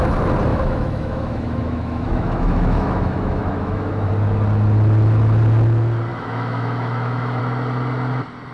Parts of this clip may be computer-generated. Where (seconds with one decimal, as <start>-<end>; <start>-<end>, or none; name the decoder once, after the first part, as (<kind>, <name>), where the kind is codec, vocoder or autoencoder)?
0.5-4.1 (autoencoder, DAC-VAE); 6.1-7.4